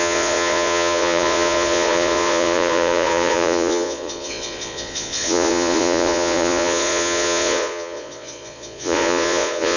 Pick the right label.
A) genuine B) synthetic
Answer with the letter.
B